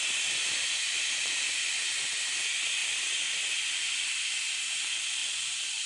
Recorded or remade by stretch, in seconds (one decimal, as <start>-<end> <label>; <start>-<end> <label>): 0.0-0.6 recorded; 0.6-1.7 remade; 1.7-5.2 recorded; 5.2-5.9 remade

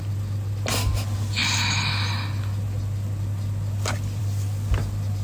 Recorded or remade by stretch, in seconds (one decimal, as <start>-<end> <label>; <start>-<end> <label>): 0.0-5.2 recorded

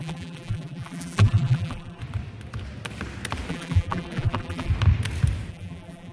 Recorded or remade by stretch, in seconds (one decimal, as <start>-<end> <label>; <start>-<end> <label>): 0.0-2.0 remade; 2.0-3.5 recorded; 3.5-4.7 remade; 4.7-5.5 recorded; 5.5-6.1 remade

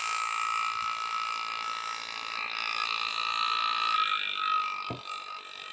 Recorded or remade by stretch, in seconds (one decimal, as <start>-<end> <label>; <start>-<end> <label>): 0.0-5.7 recorded